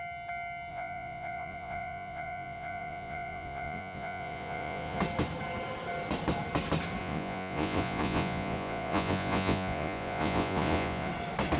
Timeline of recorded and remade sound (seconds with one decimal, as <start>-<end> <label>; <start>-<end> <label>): 0.0-0.7 recorded; 0.7-5.0 remade; 5.0-7.0 recorded; 7.0-11.1 remade; 11.1-11.6 recorded

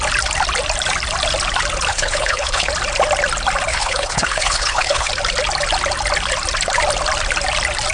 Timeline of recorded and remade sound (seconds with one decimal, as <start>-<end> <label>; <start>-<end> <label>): 0.0-1.9 recorded; 1.9-2.7 remade; 2.7-3.7 recorded; 3.7-5.1 remade; 5.1-7.9 recorded

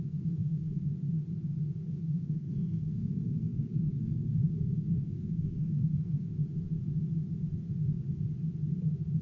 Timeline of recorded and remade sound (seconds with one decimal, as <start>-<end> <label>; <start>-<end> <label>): 0.0-0.9 remade; 0.9-1.9 recorded; 1.9-6.3 remade; 6.3-9.2 recorded

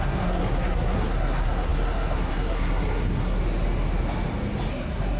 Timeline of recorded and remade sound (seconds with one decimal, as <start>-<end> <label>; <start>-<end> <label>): 0.0-3.4 remade; 3.4-4.7 recorded; 4.7-5.2 remade

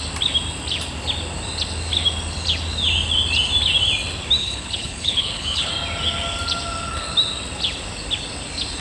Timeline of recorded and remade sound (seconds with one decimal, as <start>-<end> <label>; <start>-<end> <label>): 0.0-4.4 recorded; 4.4-5.7 remade; 5.7-8.8 recorded

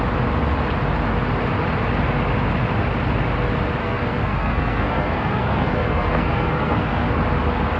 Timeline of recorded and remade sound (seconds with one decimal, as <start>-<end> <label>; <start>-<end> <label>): 0.0-3.8 recorded; 3.8-7.1 remade; 7.1-7.8 recorded